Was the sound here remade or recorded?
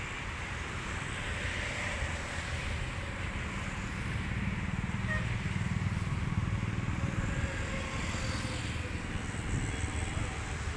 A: recorded